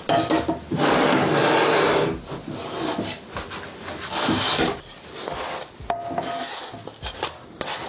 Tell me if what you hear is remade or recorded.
recorded